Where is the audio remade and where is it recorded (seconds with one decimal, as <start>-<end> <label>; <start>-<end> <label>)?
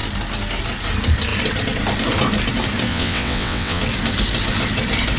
0.0-2.9 recorded; 2.9-3.8 remade; 3.8-5.2 recorded